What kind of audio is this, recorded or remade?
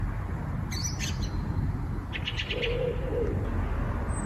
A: recorded